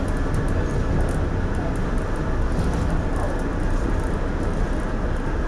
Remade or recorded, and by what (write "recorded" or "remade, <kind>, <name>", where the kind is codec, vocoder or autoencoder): recorded